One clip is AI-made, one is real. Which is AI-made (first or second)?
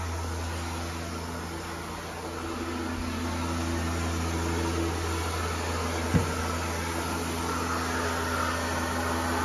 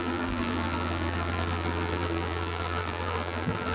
second